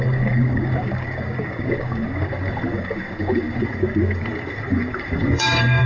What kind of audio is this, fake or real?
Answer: fake